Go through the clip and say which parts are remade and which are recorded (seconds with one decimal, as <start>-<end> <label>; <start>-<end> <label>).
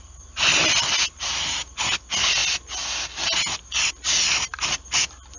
0.0-5.4 recorded